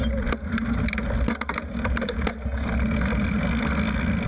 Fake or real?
real